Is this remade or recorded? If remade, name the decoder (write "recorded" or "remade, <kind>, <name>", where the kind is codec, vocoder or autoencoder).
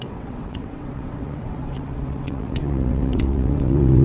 remade, vocoder, WaveNeXt